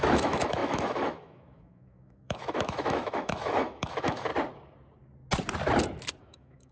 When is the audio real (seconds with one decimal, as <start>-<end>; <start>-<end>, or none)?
4.3-6.2